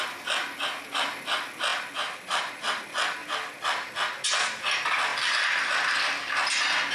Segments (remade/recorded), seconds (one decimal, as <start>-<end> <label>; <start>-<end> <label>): 0.0-6.9 recorded